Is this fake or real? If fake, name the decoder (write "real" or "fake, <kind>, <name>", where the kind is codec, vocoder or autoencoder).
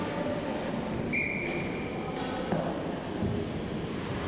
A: real